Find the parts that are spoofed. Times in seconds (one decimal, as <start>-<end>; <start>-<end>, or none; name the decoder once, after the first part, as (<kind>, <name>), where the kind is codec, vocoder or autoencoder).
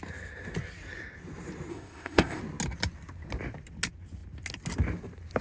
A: 1.7-2.4 (codec, ZipCodec)